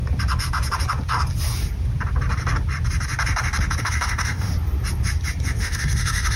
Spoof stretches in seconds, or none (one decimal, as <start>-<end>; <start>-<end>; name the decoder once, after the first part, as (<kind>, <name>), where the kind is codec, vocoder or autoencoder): 3.8-4.5 (autoencoder, DAC-VAE); 5.6-6.4